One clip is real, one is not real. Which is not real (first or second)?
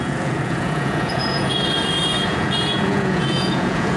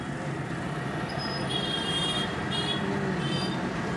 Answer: first